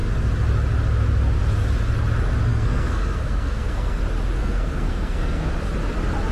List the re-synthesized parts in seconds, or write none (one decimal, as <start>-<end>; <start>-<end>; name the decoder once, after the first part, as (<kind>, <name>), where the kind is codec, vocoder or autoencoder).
2.5-4.0 (codec, SNAC); 4.4-5.5

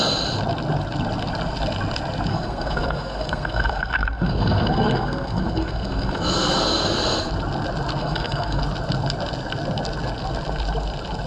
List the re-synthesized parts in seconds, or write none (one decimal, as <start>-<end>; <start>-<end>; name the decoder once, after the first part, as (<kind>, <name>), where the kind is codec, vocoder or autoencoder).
2.3-7.3 (codec, SNAC); 8.0-8.6